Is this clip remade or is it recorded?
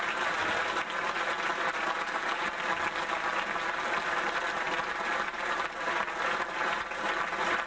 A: recorded